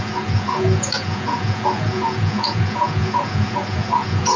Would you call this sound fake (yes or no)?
yes